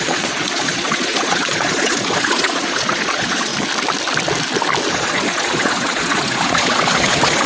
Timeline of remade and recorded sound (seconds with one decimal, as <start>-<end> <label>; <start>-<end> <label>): 0.0-3.5 remade; 3.5-4.9 recorded; 4.9-7.5 remade